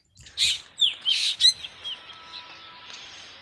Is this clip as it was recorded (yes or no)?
yes